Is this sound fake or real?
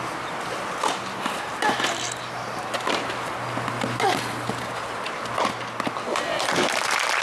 real